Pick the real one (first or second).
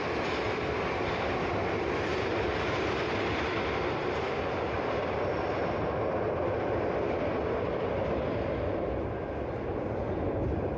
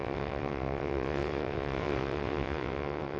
first